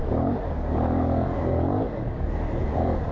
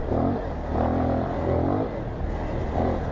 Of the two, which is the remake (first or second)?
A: first